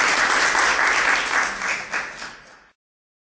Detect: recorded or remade recorded